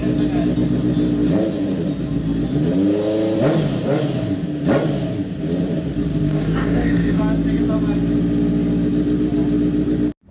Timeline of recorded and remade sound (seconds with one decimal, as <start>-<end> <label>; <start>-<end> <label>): 0.0-6.3 recorded; 6.3-7.2 remade; 7.2-10.3 recorded